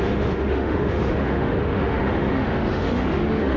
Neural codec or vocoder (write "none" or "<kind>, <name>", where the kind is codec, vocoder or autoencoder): autoencoder, DAC-VAE